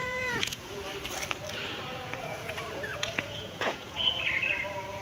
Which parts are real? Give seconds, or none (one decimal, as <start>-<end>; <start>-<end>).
0.7-1.9; 2.5-2.9; 4.2-5.0